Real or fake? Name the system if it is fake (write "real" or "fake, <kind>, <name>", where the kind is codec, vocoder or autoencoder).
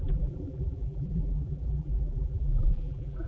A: fake, vocoder, BigVGAN v2